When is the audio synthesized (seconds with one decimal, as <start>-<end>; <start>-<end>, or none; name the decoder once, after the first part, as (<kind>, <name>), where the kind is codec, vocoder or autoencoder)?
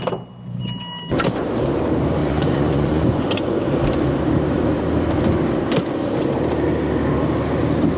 2.2-3.6 (vocoder, Vocos)